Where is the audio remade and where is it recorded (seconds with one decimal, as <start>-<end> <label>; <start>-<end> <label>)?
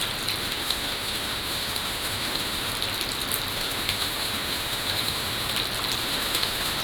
0.0-0.4 recorded; 0.4-2.7 remade; 2.7-3.5 recorded; 3.5-5.5 remade; 5.5-6.0 recorded; 6.0-6.8 remade